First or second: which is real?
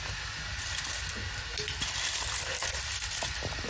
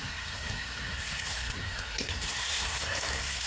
first